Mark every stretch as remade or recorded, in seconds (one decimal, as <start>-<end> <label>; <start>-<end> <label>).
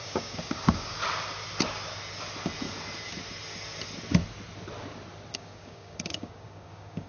0.0-1.0 remade; 1.0-5.3 recorded; 5.3-7.1 remade